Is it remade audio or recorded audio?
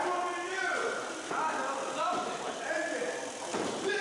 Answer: recorded